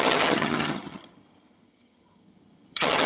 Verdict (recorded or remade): remade